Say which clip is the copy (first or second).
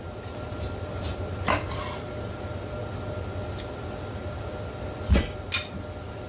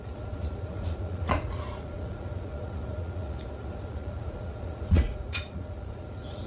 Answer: second